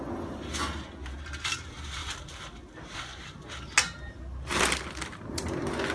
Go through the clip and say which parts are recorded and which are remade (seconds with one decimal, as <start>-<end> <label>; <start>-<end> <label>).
0.0-5.9 recorded